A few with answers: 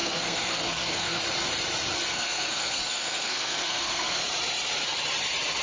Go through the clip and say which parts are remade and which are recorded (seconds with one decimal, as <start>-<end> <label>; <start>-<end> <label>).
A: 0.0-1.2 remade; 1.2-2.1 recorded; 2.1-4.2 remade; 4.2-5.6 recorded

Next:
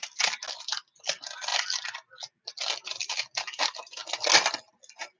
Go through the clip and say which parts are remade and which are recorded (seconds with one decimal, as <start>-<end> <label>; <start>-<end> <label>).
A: 0.0-5.2 recorded

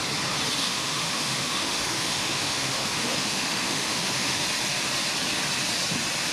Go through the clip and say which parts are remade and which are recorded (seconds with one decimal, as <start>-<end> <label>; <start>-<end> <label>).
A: 0.0-0.6 recorded; 0.6-4.4 remade; 4.4-6.3 recorded